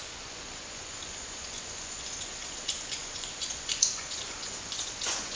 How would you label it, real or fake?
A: fake